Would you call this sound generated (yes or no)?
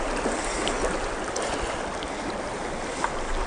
no